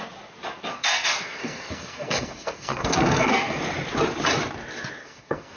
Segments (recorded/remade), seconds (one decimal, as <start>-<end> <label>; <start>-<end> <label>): 0.0-0.7 recorded; 0.7-3.6 remade; 3.6-5.0 recorded; 5.0-5.6 remade